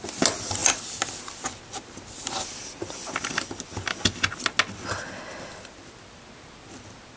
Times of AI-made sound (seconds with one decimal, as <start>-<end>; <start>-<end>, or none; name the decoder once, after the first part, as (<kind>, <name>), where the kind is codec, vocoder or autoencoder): none

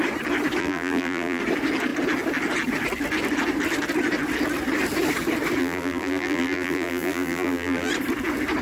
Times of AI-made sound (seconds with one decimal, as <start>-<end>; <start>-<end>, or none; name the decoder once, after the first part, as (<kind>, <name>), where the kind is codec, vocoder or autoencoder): 0.6-1.4 (vocoder, BigVGAN v2); 5.6-7.9